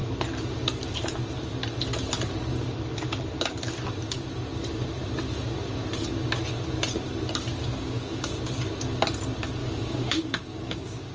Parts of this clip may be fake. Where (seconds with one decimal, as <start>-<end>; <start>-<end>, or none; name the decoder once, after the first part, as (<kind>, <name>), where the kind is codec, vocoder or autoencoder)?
7.6-8.4 (codec, DAC); 9.6-11.1